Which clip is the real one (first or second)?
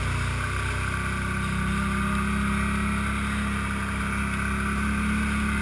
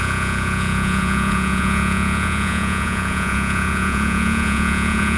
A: first